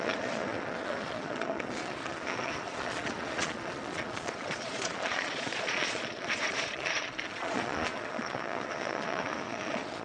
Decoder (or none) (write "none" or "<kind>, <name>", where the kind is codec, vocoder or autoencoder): vocoder, Vocos